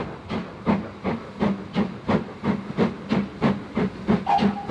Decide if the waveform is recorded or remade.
recorded